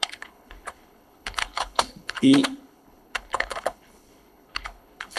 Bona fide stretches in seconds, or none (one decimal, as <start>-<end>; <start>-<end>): none